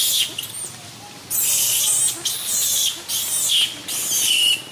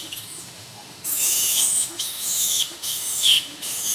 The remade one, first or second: second